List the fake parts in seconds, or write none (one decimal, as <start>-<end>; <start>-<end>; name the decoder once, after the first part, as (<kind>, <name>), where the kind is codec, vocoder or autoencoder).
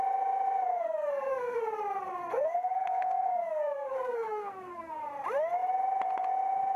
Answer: 0.7-1.6 (codec, SNAC); 2.2-4.9